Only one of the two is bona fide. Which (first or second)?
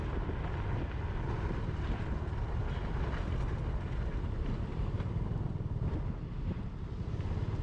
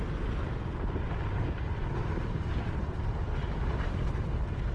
first